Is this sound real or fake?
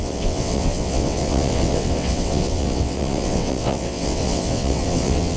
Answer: fake